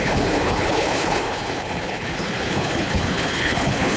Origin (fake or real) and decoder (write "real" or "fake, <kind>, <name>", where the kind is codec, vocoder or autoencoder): fake, codec, HILCodec